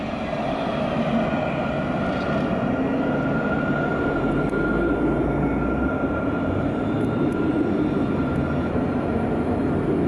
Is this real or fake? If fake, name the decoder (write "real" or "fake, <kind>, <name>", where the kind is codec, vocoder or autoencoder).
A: real